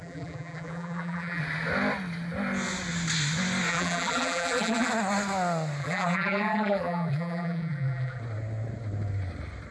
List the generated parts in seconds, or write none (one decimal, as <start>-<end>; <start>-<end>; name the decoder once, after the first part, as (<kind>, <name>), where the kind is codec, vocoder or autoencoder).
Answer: 0.0-1.4 (vocoder, BigVGAN v2); 3.7-4.9; 5.8-8.2